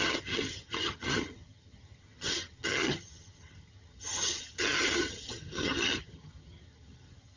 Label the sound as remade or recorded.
remade